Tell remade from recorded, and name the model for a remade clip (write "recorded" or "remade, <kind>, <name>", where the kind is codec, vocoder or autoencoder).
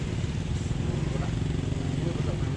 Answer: recorded